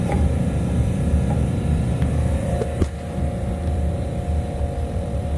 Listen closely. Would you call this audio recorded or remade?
remade